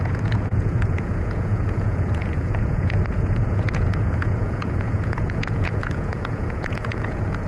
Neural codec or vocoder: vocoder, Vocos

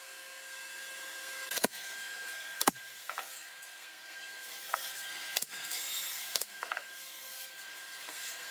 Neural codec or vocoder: codec, SNAC